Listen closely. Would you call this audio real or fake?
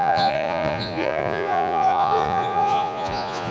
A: fake